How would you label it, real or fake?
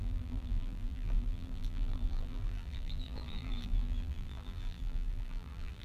fake